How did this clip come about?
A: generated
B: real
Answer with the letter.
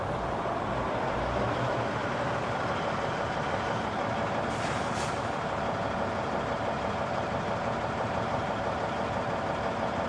A